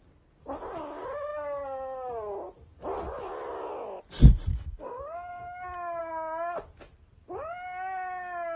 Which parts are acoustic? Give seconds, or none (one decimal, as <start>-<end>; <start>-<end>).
0.0-4.5; 5.4-8.6